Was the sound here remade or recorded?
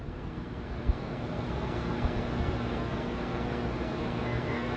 remade